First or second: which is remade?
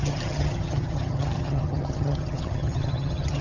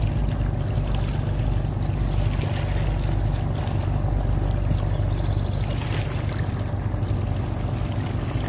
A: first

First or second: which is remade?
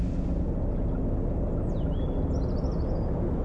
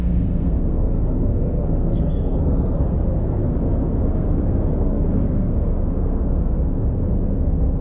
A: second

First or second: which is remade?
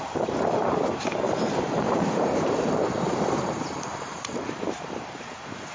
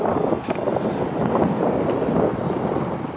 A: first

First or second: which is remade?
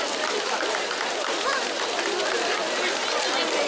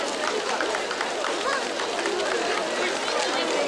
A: first